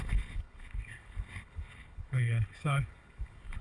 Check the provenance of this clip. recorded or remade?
remade